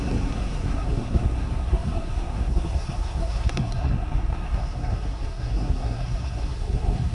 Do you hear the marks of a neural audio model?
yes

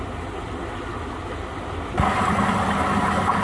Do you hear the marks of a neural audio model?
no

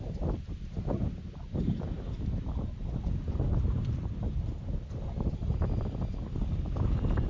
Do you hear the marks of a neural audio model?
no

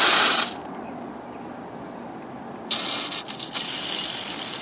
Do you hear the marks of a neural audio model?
no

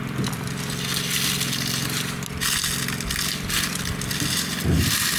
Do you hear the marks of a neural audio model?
no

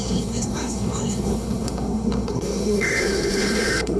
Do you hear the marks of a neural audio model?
yes